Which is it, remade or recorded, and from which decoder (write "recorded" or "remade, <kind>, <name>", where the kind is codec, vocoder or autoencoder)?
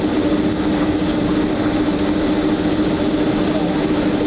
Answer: recorded